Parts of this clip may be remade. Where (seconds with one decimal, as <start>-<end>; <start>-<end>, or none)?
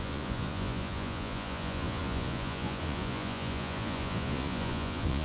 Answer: 0.0-5.2